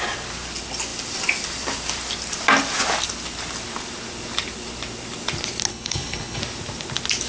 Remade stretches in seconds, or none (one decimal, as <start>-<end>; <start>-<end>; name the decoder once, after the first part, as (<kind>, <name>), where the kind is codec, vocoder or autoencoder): 5.7-6.4 (codec, HILCodec)